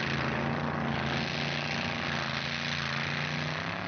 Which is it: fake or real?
real